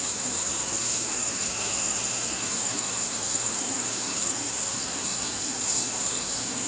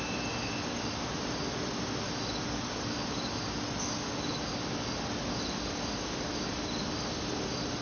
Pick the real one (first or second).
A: second